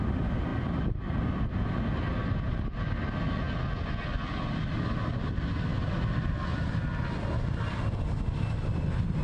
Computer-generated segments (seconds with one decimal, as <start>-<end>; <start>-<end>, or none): none